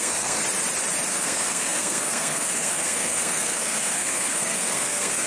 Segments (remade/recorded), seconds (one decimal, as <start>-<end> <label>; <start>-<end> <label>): 0.0-0.4 remade; 0.4-1.1 recorded; 1.1-5.3 remade